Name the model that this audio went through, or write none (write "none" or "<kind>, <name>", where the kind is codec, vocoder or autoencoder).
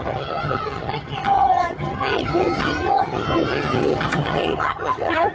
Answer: vocoder, HiFi-GAN